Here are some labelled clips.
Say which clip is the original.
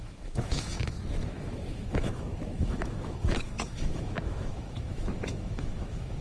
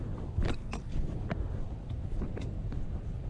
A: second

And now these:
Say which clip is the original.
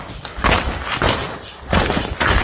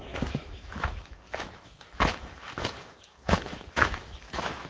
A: first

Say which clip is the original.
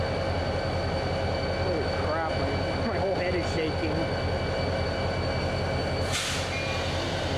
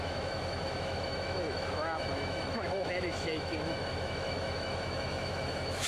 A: first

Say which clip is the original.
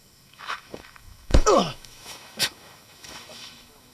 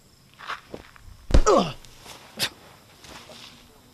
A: second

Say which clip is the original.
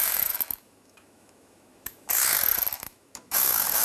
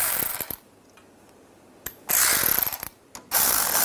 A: second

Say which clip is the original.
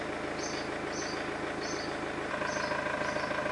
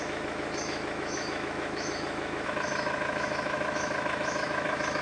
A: first